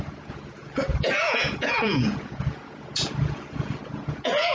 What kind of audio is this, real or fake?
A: fake